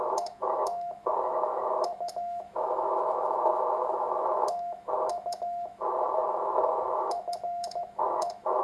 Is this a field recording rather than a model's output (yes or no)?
no